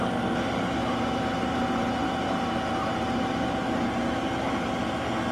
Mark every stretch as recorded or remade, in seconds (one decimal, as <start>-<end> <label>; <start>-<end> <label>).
0.0-0.8 recorded; 0.8-4.0 remade; 4.0-5.3 recorded